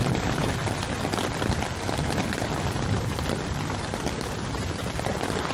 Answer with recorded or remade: remade